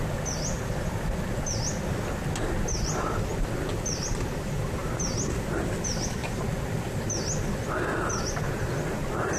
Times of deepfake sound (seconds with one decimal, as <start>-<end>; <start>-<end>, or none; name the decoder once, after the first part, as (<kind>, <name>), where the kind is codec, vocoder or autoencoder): none

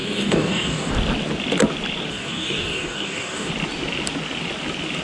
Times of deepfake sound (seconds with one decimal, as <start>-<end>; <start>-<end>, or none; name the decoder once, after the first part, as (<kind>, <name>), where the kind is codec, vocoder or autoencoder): 0.0-0.9 (codec, DAC); 2.1-3.5

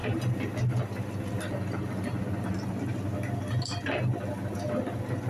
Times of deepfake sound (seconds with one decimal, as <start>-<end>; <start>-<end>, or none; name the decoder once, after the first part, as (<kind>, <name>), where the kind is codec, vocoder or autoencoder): none

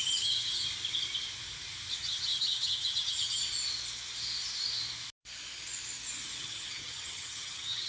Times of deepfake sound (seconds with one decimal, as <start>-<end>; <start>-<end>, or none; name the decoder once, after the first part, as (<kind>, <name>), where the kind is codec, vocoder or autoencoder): 0.0-0.6 (vocoder, HiFi-GAN); 1.9-3.4; 6.4-7.9

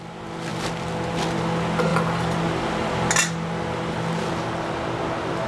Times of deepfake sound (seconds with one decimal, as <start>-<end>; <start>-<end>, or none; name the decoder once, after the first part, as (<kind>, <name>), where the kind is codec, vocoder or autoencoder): none

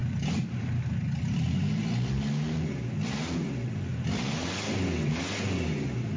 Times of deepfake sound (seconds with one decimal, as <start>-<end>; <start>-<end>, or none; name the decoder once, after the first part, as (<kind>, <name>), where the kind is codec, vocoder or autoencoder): 0.0-1.7 (vocoder, BigVGAN v2)

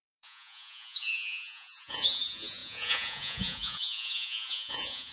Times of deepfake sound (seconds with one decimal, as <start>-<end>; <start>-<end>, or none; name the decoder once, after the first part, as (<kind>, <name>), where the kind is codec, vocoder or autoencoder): 0.0-5.1 (vocoder, Vocos)

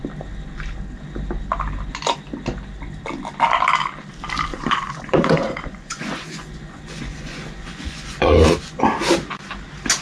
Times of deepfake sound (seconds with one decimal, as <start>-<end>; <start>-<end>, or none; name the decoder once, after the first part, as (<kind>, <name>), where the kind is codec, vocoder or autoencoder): 4.5-8.8 (vocoder, Vocos)